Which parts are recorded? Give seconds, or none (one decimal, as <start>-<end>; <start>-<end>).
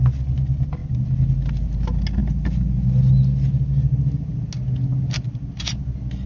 0.0-6.3